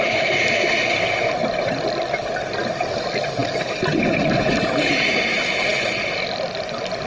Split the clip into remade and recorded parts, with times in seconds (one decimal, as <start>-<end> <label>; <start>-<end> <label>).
0.0-7.1 recorded